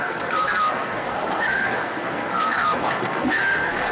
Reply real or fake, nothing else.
fake